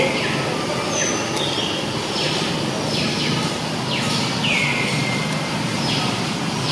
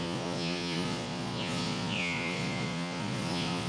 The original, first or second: first